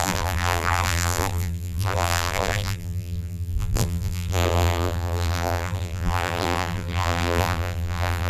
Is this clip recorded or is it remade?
remade